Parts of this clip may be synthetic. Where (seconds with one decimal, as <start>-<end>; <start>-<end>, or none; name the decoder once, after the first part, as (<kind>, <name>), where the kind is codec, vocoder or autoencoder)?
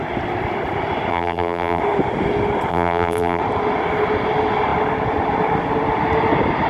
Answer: 1.1-1.8 (vocoder, BigVGAN v2); 2.7-3.4